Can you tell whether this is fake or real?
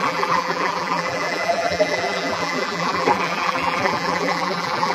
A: fake